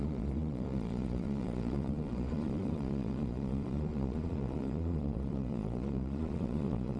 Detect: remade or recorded remade